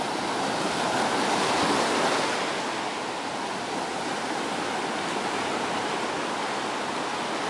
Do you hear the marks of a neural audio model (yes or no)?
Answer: no